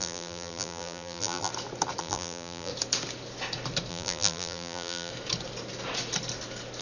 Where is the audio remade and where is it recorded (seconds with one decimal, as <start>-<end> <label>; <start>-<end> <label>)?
0.0-1.5 remade; 1.5-2.0 recorded; 2.0-2.7 remade; 2.7-3.9 recorded; 3.9-5.1 remade; 5.1-6.8 recorded